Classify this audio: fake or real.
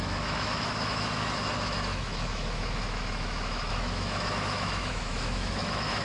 fake